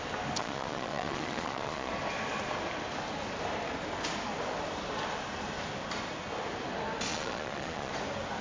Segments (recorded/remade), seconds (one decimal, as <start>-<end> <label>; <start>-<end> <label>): 0.0-0.4 recorded; 0.4-1.9 remade; 1.9-7.1 recorded; 7.1-7.9 remade; 7.9-8.4 recorded

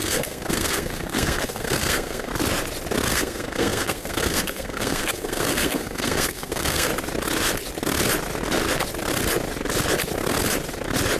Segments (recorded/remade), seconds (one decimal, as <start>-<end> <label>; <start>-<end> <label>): 0.0-2.3 remade; 2.3-3.1 recorded; 3.1-6.9 remade; 6.9-11.2 recorded

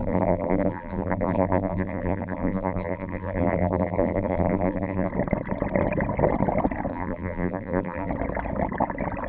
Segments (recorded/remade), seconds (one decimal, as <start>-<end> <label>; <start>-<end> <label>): 0.0-5.1 remade; 5.1-6.9 recorded; 6.9-8.1 remade; 8.1-9.3 recorded

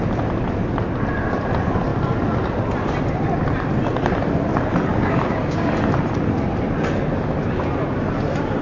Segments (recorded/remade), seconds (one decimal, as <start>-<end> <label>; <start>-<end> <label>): 0.0-4.9 recorded; 4.9-5.7 remade; 5.7-8.6 recorded

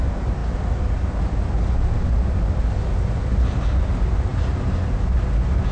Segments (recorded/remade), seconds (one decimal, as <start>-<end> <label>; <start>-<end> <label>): 0.0-5.7 recorded

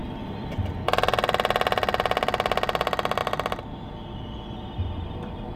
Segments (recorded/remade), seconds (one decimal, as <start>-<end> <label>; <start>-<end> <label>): 0.0-0.6 remade; 0.6-5.6 recorded